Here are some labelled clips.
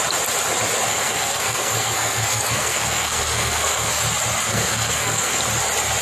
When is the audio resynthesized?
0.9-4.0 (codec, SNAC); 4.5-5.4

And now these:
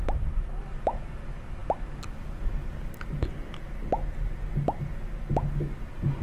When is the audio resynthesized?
none

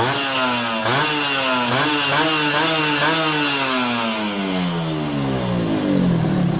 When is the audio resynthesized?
none